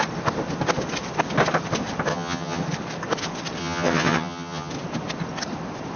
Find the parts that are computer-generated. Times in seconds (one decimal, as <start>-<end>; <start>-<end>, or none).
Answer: 2.1-2.6; 3.6-4.7